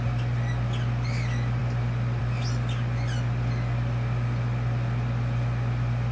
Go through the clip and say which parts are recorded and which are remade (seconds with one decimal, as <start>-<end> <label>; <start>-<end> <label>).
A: 0.0-6.1 recorded